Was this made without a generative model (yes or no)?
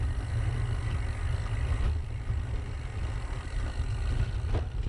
yes